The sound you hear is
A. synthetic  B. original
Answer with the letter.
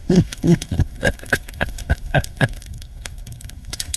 A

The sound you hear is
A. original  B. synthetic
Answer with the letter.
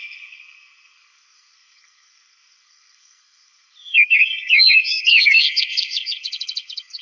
B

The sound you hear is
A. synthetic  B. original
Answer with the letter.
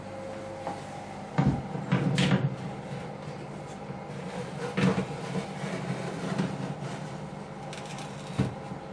B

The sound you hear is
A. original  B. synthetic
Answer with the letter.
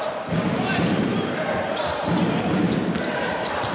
B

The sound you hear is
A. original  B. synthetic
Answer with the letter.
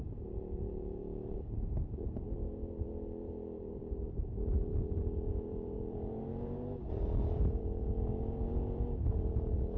B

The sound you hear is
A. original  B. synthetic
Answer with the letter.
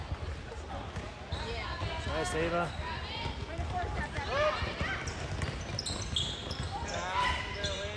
A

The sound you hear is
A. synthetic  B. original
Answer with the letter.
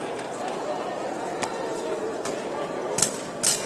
B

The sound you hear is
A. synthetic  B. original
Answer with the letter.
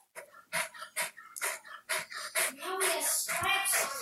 B